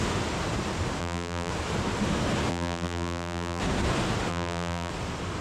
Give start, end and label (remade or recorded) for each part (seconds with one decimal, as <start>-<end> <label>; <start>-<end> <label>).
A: 0.0-1.0 recorded; 1.0-1.5 remade; 1.5-2.5 recorded; 2.5-3.6 remade; 3.6-4.3 recorded; 4.3-4.9 remade; 4.9-5.4 recorded